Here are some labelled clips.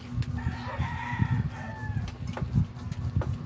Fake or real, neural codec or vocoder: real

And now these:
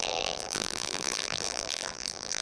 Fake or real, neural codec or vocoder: fake, vocoder, BigVGAN v2